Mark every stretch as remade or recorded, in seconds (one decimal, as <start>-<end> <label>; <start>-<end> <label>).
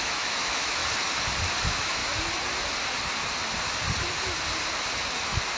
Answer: 0.0-0.8 remade; 0.8-1.6 recorded; 1.6-2.0 remade; 2.0-5.6 recorded